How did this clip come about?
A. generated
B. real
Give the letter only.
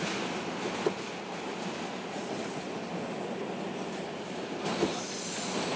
B